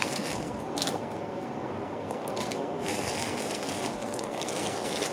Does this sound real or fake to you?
fake